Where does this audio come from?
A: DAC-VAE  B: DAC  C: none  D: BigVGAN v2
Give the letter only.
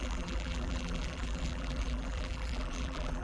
D